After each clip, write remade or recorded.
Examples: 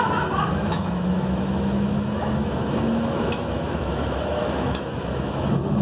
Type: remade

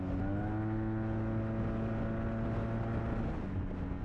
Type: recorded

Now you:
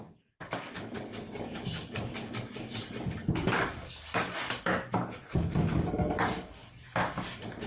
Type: remade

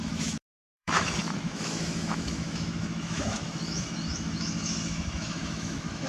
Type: remade